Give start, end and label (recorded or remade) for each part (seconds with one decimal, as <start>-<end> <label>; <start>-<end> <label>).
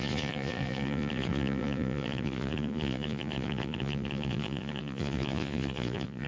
0.0-6.3 remade